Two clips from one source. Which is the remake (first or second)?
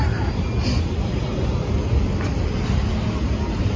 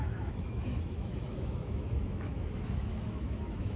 second